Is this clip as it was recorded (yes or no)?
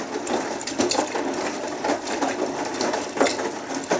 yes